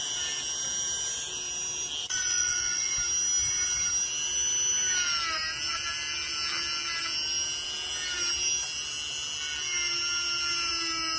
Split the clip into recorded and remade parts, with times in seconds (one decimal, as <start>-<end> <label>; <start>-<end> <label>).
0.0-2.0 recorded; 2.0-2.9 remade; 2.9-11.2 recorded